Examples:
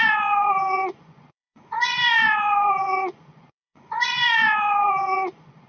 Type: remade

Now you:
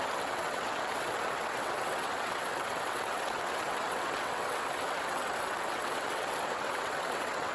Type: remade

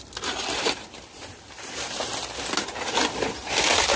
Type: recorded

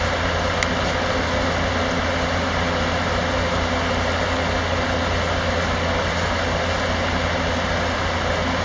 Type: recorded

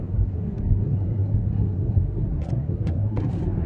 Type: remade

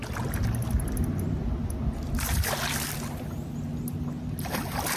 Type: recorded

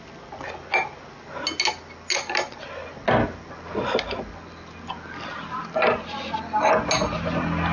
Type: recorded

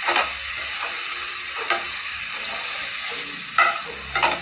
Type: recorded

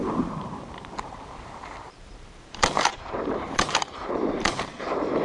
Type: remade